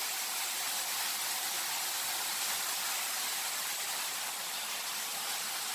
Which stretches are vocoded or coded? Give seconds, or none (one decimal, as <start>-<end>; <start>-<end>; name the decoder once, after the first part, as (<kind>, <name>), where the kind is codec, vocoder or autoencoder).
none